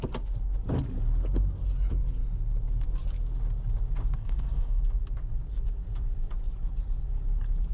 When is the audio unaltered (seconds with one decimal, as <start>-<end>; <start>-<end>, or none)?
0.0-4.2; 4.8-7.7